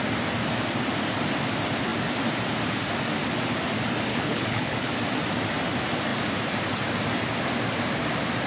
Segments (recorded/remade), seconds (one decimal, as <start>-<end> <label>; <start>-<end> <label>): 0.0-4.1 recorded; 4.1-4.9 remade; 4.9-8.5 recorded